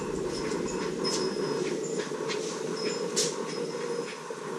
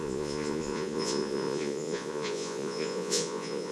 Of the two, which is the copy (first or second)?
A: second